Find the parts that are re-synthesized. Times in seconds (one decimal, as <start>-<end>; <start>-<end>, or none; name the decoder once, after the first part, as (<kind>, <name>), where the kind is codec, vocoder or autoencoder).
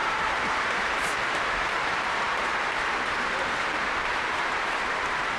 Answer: 0.0-2.5 (vocoder, BigVGAN v2); 3.9-5.4